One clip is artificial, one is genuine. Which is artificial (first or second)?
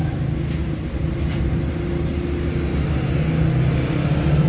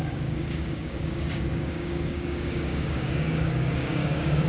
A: second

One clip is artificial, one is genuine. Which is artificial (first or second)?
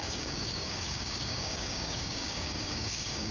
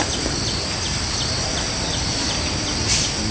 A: first